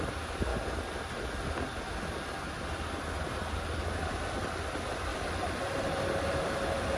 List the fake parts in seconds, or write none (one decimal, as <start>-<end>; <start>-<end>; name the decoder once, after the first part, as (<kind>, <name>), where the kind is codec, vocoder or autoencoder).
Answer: 5.1-7.0 (vocoder, BigVGAN v2)